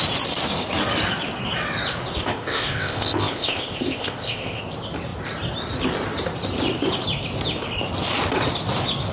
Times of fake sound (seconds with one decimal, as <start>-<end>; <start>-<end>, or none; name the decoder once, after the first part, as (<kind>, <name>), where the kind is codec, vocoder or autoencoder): 2.2-4.6 (codec, ZipCodec)